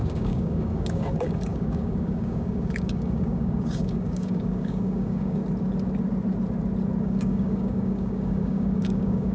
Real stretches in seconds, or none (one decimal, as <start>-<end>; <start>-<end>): 5.4-7.0